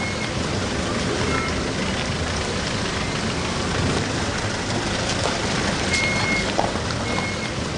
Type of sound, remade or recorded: recorded